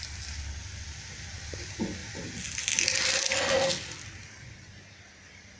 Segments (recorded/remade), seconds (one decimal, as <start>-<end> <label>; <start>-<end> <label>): 0.0-2.0 recorded; 2.0-5.6 remade

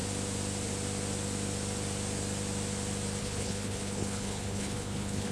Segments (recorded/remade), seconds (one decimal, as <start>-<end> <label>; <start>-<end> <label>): 0.0-3.2 recorded; 3.2-5.3 remade

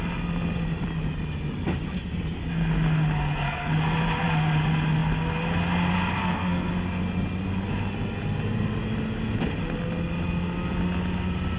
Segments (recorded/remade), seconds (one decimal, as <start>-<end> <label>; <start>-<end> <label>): 0.0-3.2 recorded; 3.2-3.7 remade; 3.7-6.2 recorded; 6.2-6.7 remade; 6.7-11.6 recorded

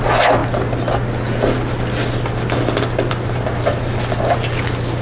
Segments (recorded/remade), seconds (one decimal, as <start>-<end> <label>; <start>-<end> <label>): 0.0-5.0 recorded